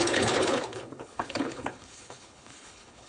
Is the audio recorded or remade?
remade